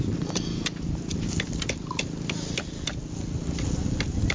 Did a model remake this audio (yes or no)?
no